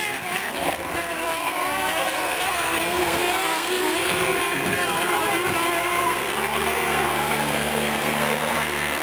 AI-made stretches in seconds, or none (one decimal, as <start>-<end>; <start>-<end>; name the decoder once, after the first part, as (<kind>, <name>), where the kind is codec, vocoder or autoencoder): 0.0-5.2 (codec, SNAC); 5.8-9.0